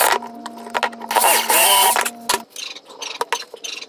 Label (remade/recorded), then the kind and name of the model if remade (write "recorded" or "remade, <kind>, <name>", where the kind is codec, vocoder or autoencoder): recorded